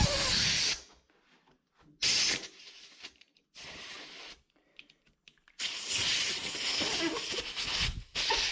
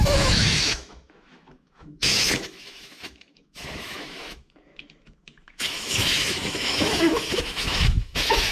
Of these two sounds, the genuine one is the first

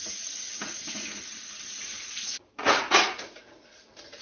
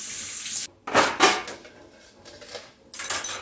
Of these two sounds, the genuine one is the second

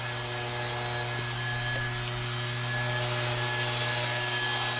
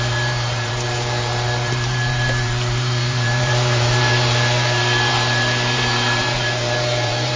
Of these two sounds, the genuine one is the first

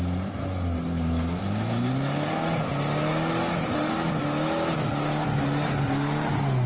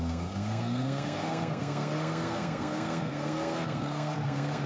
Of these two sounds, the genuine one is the first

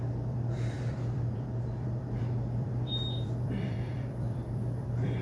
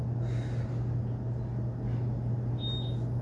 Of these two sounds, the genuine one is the second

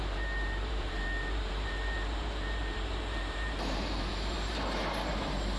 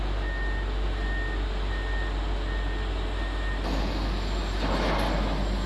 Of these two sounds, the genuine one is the second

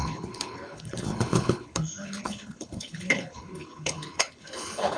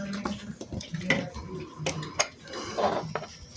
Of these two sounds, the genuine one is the second